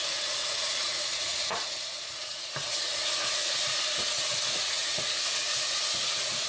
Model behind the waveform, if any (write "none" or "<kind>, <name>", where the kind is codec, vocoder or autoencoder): vocoder, Vocos